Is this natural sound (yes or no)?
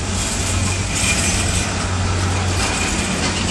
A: yes